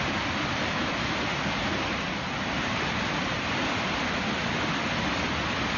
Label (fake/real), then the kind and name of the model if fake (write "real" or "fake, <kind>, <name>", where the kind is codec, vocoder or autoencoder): real